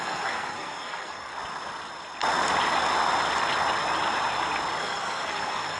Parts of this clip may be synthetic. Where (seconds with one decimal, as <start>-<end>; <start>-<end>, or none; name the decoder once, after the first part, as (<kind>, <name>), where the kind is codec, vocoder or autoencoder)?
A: 0.0-1.3 (codec, SNAC); 4.8-5.8